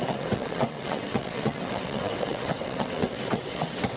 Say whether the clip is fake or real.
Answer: fake